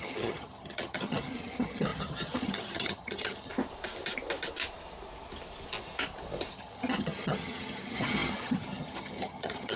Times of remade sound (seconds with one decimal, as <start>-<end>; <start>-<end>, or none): 0.0-3.5; 6.5-9.8